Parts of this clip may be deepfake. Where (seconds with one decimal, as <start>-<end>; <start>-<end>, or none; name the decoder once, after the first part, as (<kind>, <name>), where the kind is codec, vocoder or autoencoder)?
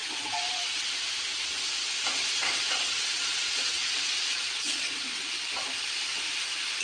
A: 0.0-0.9 (vocoder, WaveNeXt); 2.2-5.5